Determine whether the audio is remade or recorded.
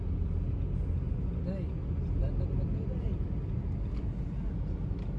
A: recorded